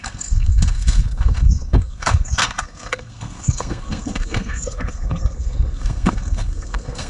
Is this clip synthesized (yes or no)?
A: yes